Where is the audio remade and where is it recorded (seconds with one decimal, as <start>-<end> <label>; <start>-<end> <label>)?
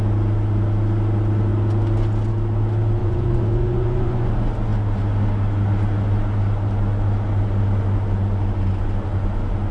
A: 0.0-3.0 recorded; 3.0-4.3 remade; 4.3-9.7 recorded